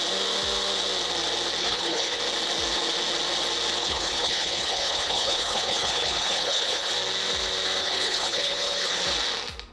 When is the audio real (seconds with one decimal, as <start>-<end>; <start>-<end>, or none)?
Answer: 0.0-1.6; 2.2-3.8; 6.9-7.8; 9.0-9.7